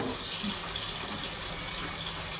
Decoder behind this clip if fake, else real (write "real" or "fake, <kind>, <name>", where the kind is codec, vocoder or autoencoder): real